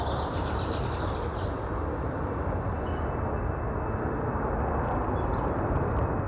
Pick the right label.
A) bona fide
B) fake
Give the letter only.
A